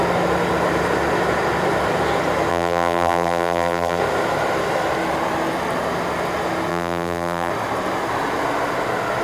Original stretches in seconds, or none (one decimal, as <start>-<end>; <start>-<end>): 0.0-2.5; 4.0-6.7; 7.5-9.2